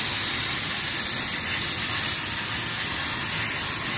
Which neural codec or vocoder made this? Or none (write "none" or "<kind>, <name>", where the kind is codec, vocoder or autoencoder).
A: none